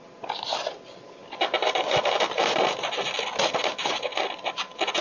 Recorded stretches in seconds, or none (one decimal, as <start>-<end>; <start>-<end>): 0.0-5.0